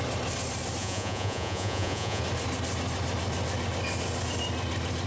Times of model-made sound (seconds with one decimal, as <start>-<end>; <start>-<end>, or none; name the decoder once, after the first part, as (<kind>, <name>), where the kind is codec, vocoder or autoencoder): 0.8-2.2 (vocoder, Vocos)